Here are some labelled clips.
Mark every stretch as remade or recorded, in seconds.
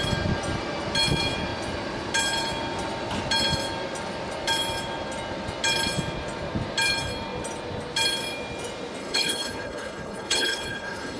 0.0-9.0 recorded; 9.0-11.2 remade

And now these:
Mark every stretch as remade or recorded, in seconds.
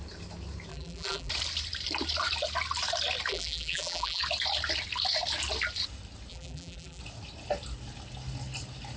0.0-0.7 recorded; 0.7-1.3 remade; 1.3-3.3 recorded; 3.3-4.2 remade; 4.2-6.3 recorded; 6.3-7.0 remade; 7.0-9.0 recorded